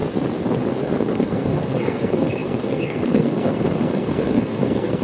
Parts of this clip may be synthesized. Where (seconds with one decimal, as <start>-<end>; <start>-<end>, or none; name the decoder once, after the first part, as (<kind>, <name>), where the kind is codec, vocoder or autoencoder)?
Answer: 0.7-5.0 (codec, SNAC)